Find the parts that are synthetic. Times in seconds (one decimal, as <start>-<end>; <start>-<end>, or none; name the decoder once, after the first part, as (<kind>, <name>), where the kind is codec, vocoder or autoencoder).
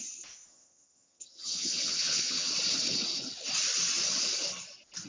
0.5-2.5 (vocoder, HiFi-GAN)